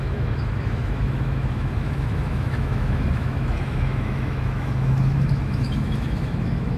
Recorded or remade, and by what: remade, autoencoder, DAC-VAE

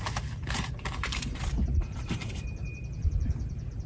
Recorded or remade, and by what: remade, vocoder, BigVGAN v2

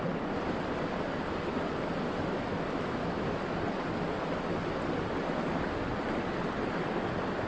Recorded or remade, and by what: recorded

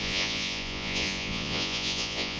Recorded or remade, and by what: remade, vocoder, Vocos